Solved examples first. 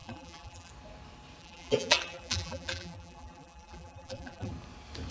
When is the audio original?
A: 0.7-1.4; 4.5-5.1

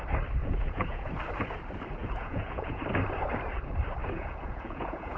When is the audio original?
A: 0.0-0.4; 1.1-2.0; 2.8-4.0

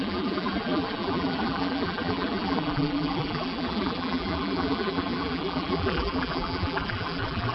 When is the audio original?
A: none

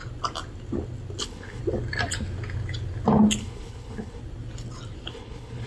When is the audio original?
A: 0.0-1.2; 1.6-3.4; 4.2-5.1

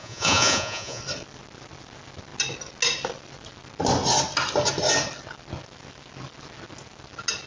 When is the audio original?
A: 1.0-7.5